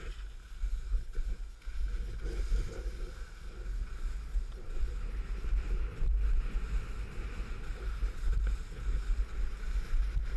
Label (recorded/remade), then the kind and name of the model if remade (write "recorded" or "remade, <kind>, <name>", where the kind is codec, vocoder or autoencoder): recorded